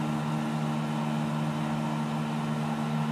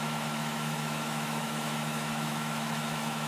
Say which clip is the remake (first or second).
second